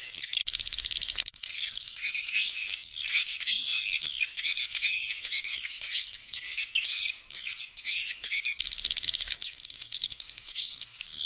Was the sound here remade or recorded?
remade